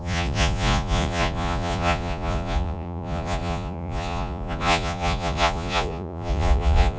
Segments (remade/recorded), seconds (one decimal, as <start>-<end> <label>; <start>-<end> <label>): 0.0-7.0 remade